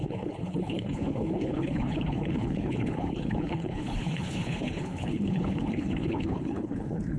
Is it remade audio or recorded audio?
remade